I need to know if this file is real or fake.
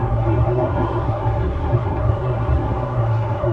fake